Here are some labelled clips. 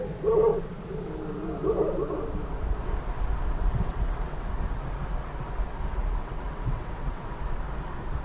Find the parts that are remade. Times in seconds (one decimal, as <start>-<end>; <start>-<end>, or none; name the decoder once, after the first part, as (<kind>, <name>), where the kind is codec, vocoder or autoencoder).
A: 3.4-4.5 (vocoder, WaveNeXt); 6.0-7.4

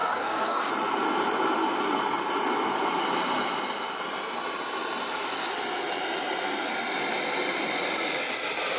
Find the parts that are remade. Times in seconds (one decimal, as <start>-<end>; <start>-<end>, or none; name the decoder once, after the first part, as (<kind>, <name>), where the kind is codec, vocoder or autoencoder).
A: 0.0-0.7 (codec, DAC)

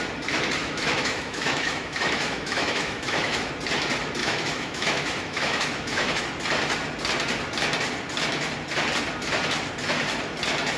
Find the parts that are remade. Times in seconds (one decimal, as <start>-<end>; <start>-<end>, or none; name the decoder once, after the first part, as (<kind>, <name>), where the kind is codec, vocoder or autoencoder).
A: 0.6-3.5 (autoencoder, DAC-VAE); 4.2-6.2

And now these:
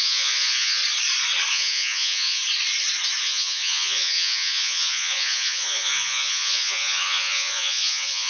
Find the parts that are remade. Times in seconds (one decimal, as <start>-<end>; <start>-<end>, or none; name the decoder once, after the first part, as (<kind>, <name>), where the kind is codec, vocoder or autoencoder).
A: 0.0-0.8 (vocoder, Vocos); 1.5-2.4; 3.2-8.3

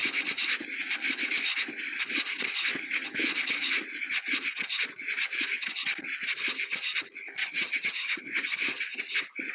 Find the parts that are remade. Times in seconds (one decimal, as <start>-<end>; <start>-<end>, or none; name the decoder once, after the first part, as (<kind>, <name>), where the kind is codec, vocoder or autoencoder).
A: 7.4-8.2 (vocoder, HiFi-GAN)